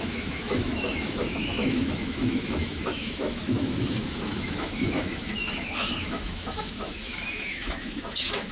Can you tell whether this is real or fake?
fake